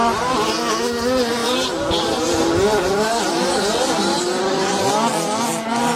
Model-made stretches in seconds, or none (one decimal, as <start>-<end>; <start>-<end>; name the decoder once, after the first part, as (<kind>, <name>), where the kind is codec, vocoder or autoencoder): 1.4-3.3 (vocoder, BigVGAN v2)